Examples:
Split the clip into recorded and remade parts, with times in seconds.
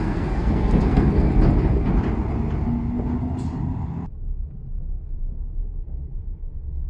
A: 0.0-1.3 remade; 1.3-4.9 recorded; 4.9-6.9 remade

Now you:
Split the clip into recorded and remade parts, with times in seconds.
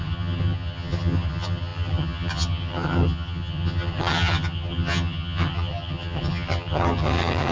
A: 0.0-7.5 remade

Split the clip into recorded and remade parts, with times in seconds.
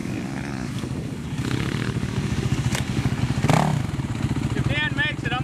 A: 0.0-3.2 remade; 3.2-5.4 recorded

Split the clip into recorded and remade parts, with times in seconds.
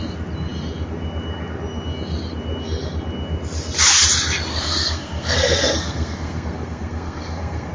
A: 0.0-4.5 recorded; 4.5-7.7 remade